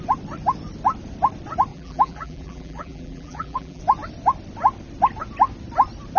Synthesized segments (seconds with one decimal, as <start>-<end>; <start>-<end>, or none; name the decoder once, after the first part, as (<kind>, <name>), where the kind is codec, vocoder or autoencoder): 1.7-3.8 (vocoder, BigVGAN v2)